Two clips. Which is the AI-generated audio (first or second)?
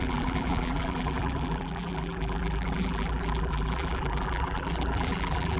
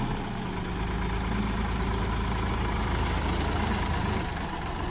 first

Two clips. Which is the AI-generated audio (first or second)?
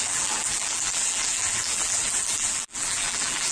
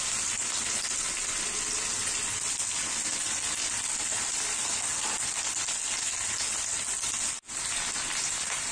first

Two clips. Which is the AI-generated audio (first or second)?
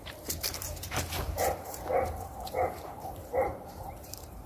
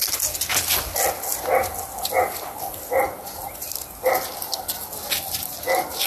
first